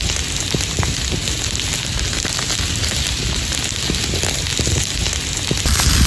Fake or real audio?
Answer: real